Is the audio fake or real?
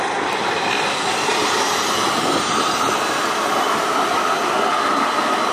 real